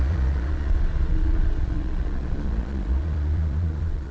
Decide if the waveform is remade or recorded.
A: remade